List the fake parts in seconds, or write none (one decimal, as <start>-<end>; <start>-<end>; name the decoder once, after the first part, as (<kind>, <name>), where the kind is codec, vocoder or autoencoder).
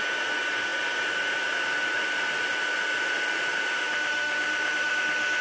3.8-5.4 (autoencoder, DAC-VAE)